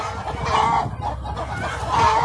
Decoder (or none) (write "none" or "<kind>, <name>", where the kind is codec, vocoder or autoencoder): none